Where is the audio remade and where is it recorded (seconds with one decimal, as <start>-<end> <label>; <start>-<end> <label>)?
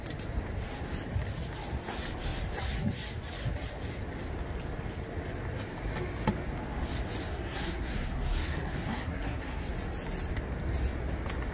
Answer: 0.0-7.3 recorded; 7.3-9.7 remade; 9.7-11.5 recorded